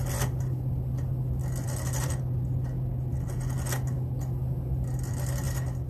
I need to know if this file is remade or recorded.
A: recorded